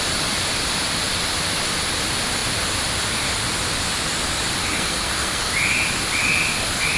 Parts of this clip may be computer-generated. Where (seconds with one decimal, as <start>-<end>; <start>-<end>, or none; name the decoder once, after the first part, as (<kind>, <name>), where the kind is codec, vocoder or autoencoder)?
4.6-5.5 (codec, SNAC)